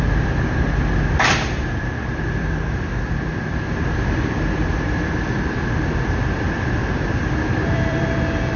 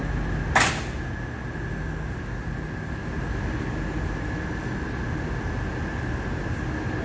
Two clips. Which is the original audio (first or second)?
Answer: second